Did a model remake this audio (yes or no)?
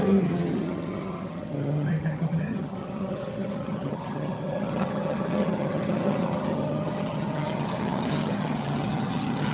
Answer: yes